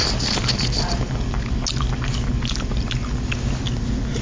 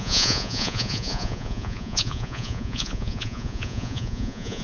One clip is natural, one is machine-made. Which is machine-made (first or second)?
second